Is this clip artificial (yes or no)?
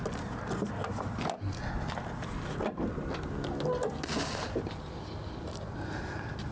no